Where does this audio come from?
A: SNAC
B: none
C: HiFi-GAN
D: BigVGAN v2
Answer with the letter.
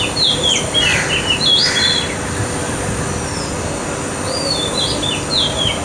B